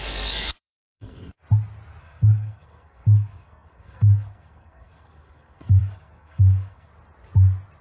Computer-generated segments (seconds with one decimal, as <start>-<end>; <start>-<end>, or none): 0.0-1.4; 2.0-6.9